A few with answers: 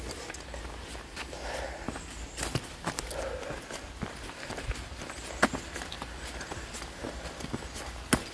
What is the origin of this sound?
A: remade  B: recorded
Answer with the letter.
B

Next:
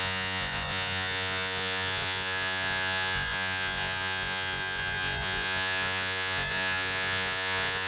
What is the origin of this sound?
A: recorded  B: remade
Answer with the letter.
B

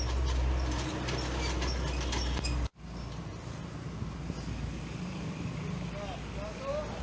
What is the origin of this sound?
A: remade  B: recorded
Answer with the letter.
B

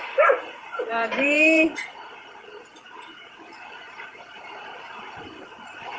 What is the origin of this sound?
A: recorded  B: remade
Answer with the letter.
B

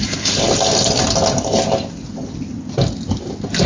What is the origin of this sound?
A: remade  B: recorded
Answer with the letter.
B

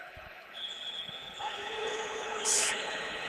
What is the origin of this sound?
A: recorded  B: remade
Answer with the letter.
B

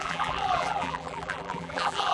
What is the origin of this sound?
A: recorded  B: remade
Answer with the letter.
B